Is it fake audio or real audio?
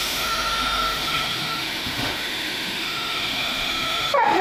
fake